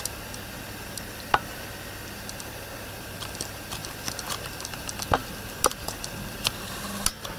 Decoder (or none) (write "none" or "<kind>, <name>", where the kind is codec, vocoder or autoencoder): none